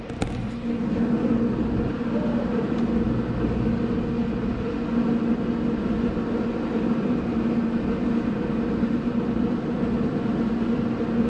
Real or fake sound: real